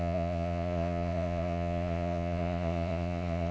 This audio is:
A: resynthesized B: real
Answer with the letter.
A